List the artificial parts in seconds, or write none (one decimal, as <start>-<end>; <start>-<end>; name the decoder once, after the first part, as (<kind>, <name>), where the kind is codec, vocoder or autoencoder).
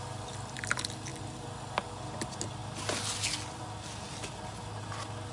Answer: none